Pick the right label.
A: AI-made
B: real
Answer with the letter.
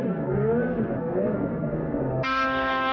A